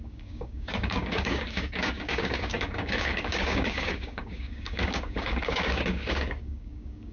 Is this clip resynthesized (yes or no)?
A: yes